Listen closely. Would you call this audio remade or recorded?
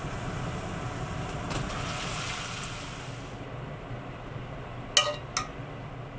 recorded